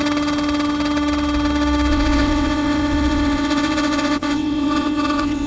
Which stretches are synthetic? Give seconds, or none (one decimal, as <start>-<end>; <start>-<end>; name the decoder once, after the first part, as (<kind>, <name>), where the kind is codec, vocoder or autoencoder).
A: 1.9-5.5 (vocoder, WaveNeXt)